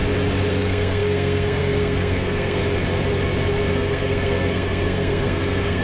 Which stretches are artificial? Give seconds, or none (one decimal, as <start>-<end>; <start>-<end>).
0.5-2.6; 3.7-5.8